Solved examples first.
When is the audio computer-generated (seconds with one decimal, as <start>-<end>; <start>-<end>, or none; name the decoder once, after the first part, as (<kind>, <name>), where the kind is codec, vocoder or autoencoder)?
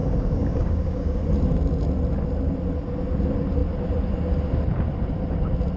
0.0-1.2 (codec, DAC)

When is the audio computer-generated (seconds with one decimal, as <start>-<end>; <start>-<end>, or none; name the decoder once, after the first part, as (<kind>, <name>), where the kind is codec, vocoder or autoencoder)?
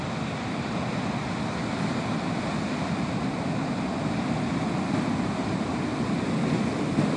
none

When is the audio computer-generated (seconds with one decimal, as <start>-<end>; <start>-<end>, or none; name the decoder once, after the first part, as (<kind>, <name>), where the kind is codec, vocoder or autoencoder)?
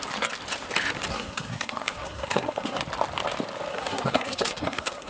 1.1-2.8 (codec, SNAC); 3.7-5.1